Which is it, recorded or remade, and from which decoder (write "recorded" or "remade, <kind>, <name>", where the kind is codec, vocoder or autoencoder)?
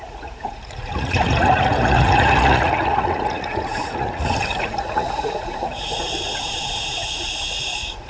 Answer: remade, vocoder, Vocos